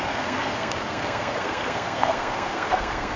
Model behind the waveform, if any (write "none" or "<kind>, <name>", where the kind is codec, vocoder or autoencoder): codec, SNAC